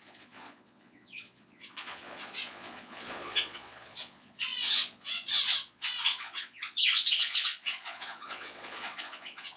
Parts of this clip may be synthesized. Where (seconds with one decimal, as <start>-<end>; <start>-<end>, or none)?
0.0-9.6